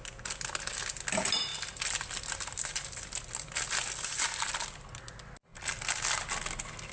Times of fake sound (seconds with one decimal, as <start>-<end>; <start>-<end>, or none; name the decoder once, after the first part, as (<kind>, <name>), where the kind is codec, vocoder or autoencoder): none